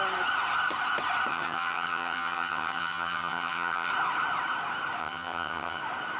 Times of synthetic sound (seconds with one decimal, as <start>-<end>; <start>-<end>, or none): 1.3-3.9; 5.0-5.8